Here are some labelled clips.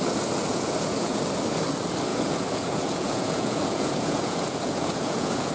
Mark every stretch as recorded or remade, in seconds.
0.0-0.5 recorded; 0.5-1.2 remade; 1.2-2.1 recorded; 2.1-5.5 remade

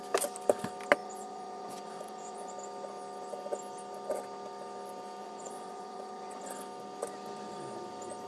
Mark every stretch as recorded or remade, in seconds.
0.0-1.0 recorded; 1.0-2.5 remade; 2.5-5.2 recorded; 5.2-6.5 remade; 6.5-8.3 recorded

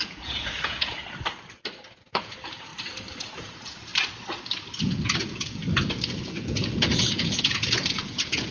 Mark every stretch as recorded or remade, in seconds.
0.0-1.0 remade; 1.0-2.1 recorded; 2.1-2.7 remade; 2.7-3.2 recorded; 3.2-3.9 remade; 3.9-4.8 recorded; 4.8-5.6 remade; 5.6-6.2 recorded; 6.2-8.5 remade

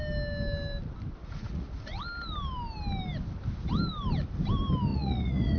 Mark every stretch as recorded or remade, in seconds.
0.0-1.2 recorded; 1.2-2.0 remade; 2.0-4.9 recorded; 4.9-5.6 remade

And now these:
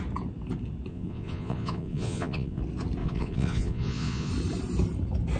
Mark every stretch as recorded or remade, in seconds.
0.0-0.9 recorded; 0.9-2.6 remade; 2.6-3.0 recorded; 3.0-4.3 remade; 4.3-5.4 recorded

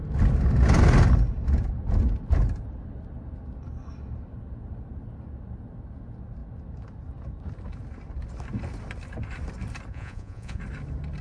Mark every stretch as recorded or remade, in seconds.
0.0-9.9 recorded; 9.9-10.6 remade; 10.6-11.2 recorded

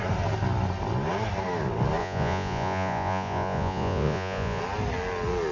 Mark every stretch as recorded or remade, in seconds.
0.0-2.0 recorded; 2.0-4.6 remade; 4.6-5.5 recorded